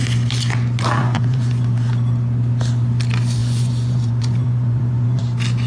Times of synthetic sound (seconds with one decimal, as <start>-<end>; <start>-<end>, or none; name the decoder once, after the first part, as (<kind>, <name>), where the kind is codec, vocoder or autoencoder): 1.0-1.9 (vocoder, Vocos); 3.4-5.2